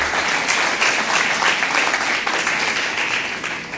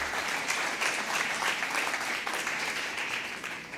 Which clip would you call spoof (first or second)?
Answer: second